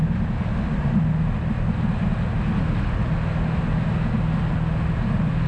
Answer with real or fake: real